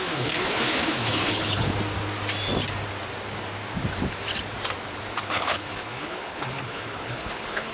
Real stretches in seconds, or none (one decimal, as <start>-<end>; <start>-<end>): 1.7-5.2